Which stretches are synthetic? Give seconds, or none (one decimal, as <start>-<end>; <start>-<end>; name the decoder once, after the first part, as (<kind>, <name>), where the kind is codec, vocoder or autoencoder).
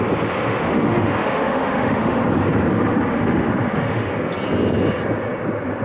0.4-2.2 (autoencoder, DAC-VAE); 3.1-4.1